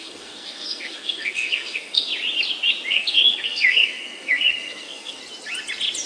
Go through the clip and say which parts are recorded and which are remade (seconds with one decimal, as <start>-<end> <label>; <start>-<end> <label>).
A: 0.0-2.1 remade; 2.1-2.9 recorded; 2.9-5.2 remade; 5.2-6.1 recorded